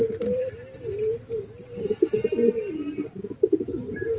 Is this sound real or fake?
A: real